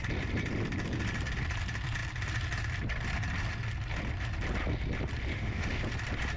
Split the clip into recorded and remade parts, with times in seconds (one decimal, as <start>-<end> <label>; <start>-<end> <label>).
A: 0.0-5.3 recorded; 5.3-5.8 remade; 5.8-6.4 recorded